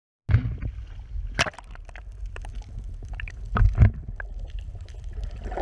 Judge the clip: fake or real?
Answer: real